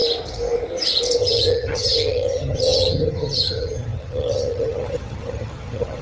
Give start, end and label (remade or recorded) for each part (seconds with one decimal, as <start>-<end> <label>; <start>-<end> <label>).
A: 0.0-1.2 recorded; 1.2-6.0 remade